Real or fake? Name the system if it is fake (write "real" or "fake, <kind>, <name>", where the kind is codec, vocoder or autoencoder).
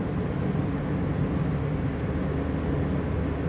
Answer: real